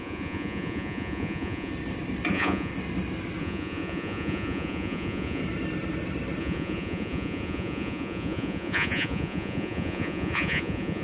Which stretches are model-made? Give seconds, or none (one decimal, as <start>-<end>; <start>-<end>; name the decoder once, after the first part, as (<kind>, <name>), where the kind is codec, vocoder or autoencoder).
0.0-1.7 (vocoder, Vocos); 2.3-2.7; 3.4-5.4; 6.4-11.0